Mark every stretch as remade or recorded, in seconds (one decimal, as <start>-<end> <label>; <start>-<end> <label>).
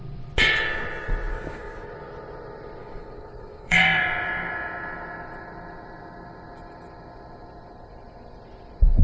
0.0-1.3 recorded; 1.3-1.9 remade; 1.9-2.8 recorded; 2.8-4.0 remade; 4.0-9.0 recorded